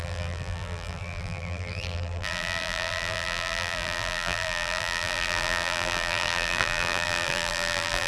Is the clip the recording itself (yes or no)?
no